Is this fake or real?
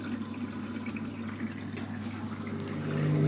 real